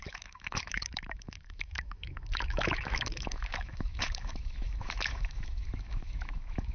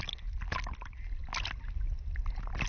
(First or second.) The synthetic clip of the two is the first